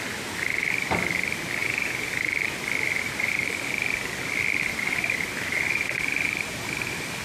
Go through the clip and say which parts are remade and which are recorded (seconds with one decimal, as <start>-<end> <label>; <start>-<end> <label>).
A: 0.0-7.2 recorded